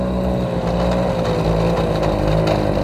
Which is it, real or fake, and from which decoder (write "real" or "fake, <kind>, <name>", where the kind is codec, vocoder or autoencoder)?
real